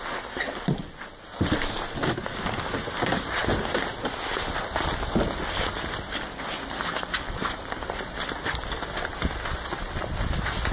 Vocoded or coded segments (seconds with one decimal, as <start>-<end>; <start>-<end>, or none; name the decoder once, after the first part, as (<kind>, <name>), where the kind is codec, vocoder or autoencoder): none